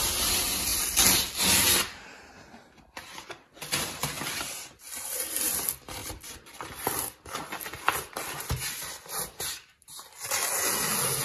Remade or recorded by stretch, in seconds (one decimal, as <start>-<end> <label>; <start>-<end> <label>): 0.0-6.0 recorded; 6.0-8.6 remade; 8.6-11.2 recorded